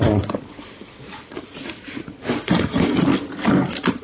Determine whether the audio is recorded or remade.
recorded